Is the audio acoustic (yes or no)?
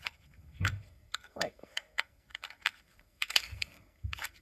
no